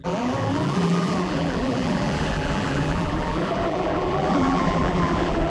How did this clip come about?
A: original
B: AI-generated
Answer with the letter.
B